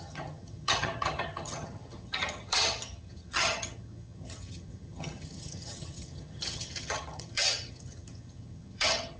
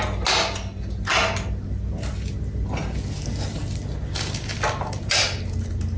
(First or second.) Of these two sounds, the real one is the second